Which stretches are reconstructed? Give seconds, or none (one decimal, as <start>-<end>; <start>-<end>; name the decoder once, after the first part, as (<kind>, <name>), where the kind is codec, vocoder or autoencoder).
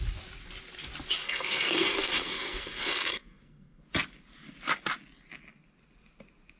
1.2-3.8 (codec, SNAC)